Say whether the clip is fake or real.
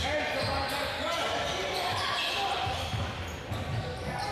real